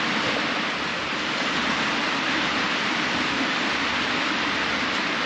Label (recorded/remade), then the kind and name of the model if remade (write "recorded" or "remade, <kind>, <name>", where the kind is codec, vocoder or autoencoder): recorded